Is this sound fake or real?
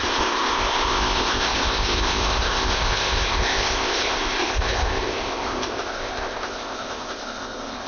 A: fake